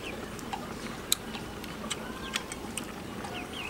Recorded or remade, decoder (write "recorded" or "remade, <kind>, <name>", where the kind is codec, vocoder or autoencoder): recorded